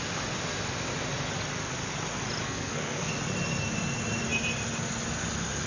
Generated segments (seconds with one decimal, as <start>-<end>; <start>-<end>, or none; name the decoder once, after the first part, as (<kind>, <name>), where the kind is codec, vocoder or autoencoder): 2.4-3.1 (codec, SNAC)